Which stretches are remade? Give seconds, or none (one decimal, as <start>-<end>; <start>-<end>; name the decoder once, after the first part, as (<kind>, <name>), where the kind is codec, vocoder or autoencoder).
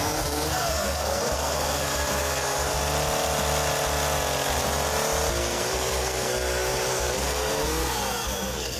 0.0-2.8 (codec, SNAC); 5.4-8.8